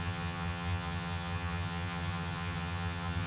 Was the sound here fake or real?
fake